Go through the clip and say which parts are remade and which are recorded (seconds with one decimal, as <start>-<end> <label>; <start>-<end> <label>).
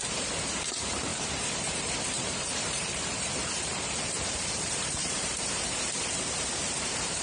0.0-7.2 remade